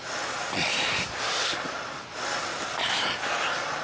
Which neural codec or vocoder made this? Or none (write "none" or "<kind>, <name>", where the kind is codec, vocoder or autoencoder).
none